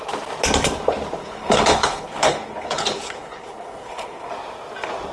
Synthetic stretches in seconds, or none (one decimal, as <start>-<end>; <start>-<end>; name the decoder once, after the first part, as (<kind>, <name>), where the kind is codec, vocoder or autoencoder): 1.2-4.3 (codec, HILCodec)